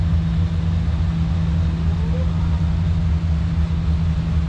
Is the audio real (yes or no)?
yes